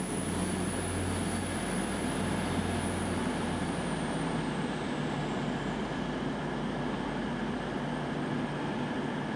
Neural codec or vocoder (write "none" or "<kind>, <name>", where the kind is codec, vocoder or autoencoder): none